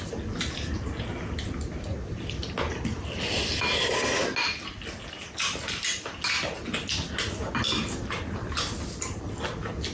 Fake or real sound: real